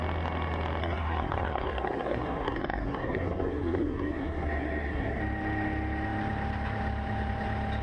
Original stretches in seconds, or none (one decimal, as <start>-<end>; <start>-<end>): 0.0-0.8; 5.2-7.8